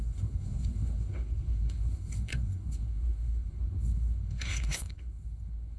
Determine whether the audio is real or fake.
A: fake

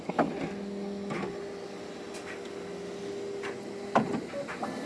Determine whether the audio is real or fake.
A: real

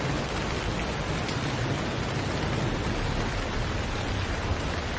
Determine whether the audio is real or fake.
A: real